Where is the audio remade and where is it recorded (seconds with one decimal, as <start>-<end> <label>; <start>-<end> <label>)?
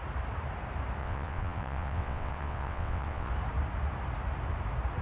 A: 0.0-1.0 recorded; 1.0-3.3 remade; 3.3-5.0 recorded